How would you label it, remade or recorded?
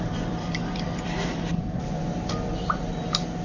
remade